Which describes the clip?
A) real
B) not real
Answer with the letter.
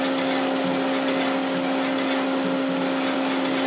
A